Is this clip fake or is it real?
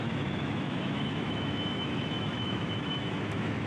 fake